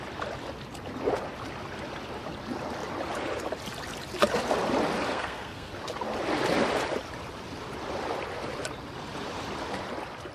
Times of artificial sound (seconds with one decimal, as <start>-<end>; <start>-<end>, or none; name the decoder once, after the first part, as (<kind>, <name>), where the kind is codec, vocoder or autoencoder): 5.1-5.7 (codec, SNAC)